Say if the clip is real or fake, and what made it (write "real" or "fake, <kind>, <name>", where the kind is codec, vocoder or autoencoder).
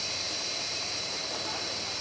fake, vocoder, BigVGAN v2